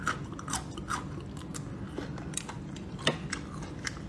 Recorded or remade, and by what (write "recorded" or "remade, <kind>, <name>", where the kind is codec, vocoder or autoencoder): recorded